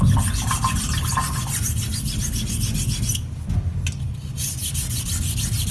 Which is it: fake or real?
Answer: real